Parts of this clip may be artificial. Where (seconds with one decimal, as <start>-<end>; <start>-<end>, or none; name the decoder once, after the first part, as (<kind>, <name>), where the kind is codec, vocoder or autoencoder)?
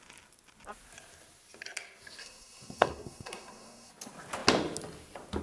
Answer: 2.2-3.9 (codec, SNAC)